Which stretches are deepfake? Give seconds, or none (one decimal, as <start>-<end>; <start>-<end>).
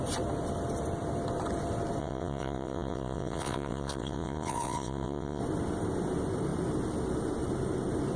2.0-5.4